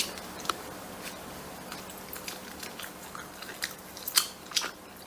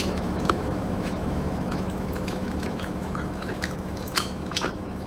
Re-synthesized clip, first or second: second